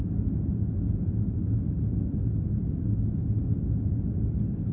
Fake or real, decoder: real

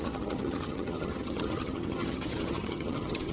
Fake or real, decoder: fake, vocoder, HiFi-GAN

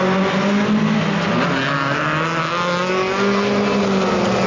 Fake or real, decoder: real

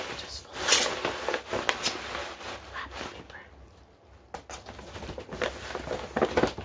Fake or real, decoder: real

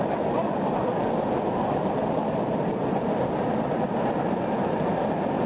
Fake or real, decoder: real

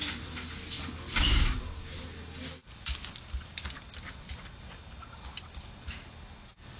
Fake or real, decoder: real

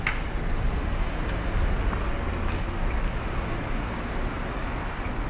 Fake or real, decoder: real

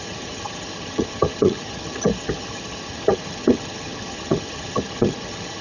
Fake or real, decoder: fake, vocoder, HiFi-GAN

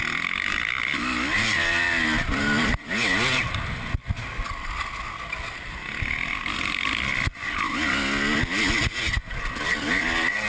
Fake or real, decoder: real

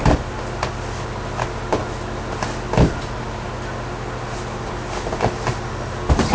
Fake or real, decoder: real